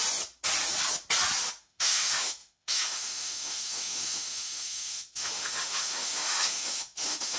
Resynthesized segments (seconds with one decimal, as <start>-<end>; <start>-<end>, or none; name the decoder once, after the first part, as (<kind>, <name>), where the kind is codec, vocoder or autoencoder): 1.6-7.4 (autoencoder, DAC-VAE)